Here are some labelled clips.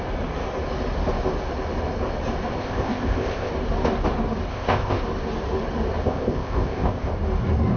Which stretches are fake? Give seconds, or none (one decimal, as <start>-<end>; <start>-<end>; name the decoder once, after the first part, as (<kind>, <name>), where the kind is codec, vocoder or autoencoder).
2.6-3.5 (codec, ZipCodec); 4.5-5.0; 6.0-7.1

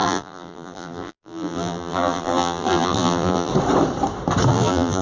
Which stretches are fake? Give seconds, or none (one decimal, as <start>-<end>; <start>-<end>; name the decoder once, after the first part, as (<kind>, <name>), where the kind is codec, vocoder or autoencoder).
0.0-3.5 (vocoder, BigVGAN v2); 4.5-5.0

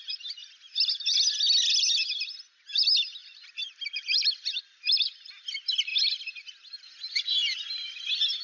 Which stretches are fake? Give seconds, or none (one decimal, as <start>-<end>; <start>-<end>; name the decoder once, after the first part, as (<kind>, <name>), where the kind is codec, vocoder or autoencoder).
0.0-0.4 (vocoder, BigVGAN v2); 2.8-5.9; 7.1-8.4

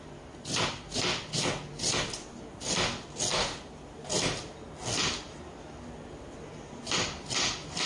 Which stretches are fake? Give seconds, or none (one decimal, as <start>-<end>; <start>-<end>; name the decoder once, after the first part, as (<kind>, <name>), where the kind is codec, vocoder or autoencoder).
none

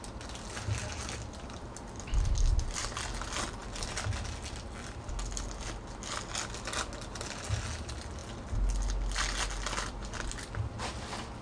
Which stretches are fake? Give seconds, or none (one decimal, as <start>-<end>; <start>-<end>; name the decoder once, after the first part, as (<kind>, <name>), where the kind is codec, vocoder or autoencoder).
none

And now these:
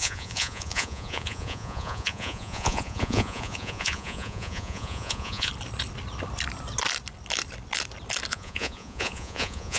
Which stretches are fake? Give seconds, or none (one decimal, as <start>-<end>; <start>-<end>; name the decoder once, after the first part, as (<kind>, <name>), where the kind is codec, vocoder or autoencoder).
0.0-5.5 (vocoder, Vocos); 8.3-9.8

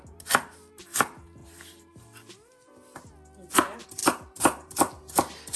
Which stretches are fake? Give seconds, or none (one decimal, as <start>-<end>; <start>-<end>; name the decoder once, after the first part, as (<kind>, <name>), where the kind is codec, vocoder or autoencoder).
1.4-2.0 (vocoder, BigVGAN v2); 4.0-4.7

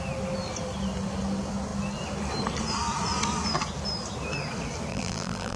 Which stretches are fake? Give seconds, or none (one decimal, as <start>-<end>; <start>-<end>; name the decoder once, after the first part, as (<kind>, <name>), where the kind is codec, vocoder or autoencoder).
4.9-5.6 (vocoder, BigVGAN v2)